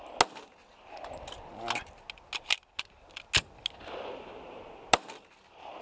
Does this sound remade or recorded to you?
recorded